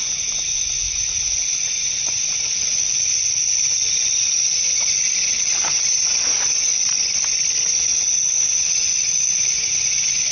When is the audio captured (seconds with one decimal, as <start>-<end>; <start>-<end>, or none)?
2.9-4.0; 6.7-7.8